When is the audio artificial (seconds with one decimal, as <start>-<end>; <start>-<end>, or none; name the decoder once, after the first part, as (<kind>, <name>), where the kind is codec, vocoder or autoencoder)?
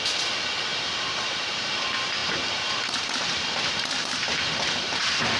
0.7-1.7 (vocoder, BigVGAN v2); 2.2-4.3